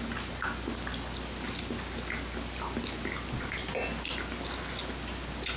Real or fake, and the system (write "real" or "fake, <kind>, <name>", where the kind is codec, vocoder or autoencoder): real